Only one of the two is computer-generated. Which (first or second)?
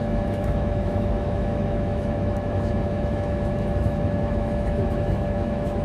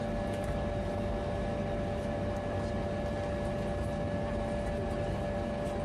first